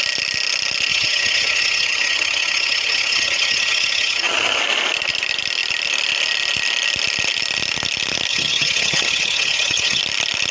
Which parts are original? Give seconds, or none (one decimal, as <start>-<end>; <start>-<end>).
0.0-0.9; 4.6-8.3; 10.0-10.5

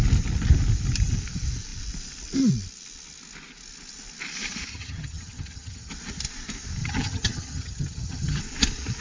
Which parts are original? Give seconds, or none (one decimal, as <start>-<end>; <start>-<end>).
0.0-4.7; 5.9-6.8; 8.4-9.0

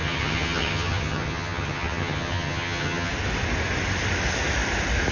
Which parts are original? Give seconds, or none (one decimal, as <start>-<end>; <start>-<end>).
3.1-5.1

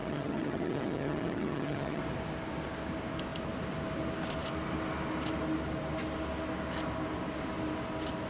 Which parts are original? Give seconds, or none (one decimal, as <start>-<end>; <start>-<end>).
2.0-8.3

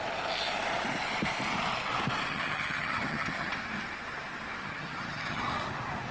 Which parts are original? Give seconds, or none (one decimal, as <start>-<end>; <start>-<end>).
0.0-2.3; 3.5-4.6; 5.4-6.1

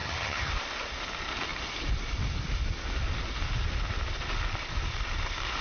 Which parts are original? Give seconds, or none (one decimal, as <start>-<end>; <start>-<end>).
0.5-5.6